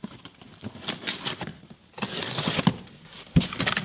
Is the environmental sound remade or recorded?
recorded